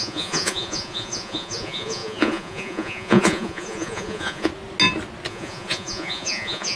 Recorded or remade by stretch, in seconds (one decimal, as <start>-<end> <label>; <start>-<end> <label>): 0.0-4.5 remade; 4.5-5.3 recorded; 5.3-6.8 remade